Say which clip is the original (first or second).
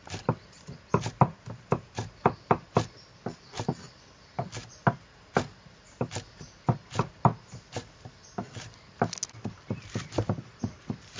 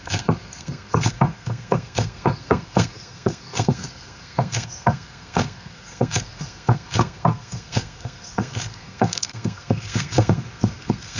first